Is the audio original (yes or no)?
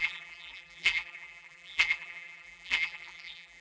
no